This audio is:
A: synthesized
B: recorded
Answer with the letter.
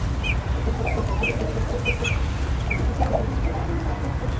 B